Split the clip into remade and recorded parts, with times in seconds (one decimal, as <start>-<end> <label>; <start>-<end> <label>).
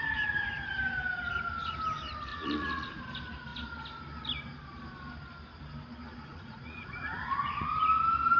0.0-2.3 recorded; 2.3-3.0 remade; 3.0-6.3 recorded; 6.3-7.7 remade; 7.7-8.4 recorded